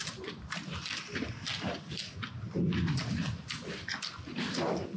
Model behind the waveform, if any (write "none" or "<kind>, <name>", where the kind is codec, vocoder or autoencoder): vocoder, BigVGAN v2